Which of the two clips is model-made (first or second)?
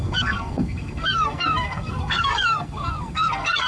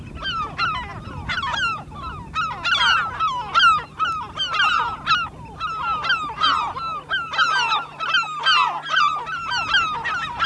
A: first